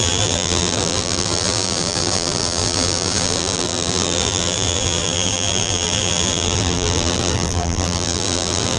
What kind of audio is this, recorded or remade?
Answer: remade